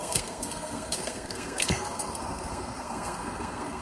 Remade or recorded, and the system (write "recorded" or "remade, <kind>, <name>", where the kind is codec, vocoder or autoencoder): remade, codec, SNAC